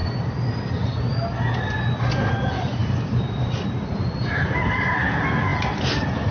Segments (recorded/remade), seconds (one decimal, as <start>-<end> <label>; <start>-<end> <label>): 0.0-6.3 recorded